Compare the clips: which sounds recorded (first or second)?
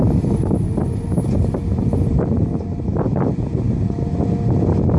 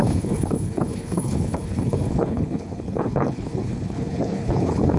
first